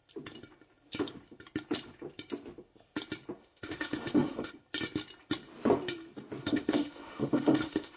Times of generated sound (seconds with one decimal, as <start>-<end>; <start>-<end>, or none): 3.4-4.5; 6.4-8.0